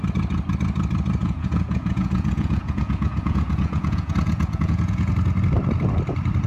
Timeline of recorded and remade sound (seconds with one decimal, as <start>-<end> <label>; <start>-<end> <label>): 0.0-1.2 recorded; 1.2-5.1 remade; 5.1-6.5 recorded